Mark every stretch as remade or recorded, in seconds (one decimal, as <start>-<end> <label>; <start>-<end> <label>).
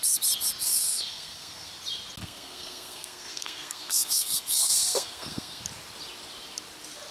0.0-0.6 recorded; 0.6-1.7 remade; 1.7-2.2 recorded; 2.2-5.6 remade; 5.6-7.1 recorded